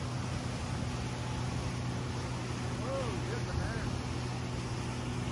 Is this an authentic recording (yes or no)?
yes